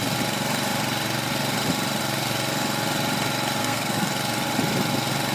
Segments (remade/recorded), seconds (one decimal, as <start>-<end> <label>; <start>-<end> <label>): 0.0-3.6 recorded; 3.6-4.1 remade; 4.1-5.3 recorded